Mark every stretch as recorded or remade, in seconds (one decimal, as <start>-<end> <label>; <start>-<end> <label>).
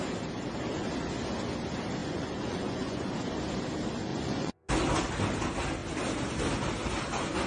0.0-2.0 recorded; 2.0-3.1 remade; 3.1-4.1 recorded; 4.1-4.7 remade; 4.7-7.5 recorded